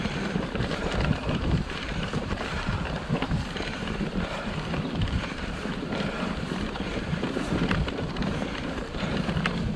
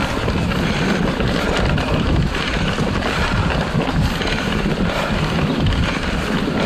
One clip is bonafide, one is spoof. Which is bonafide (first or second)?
second